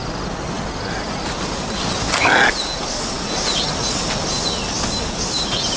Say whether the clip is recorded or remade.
recorded